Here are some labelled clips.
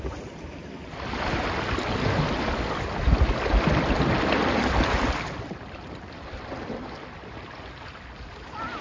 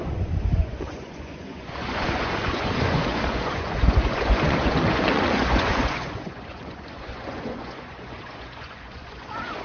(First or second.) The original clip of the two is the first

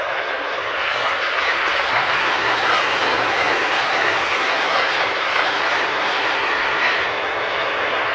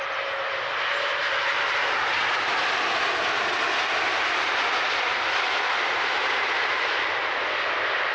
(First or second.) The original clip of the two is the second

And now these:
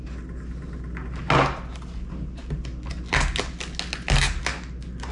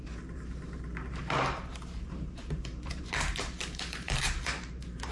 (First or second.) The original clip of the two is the first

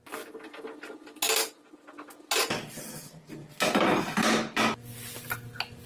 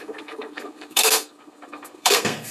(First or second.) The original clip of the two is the first